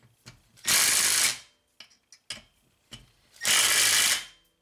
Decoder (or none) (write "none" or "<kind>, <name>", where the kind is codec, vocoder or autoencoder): none